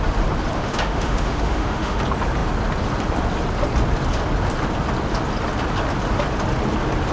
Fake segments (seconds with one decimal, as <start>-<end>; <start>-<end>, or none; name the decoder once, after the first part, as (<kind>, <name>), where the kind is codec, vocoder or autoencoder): 0.6-2.0 (autoencoder, DAC-VAE)